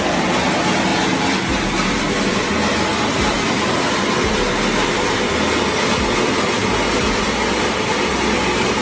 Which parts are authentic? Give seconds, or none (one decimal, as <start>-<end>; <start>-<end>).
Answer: 0.0-8.8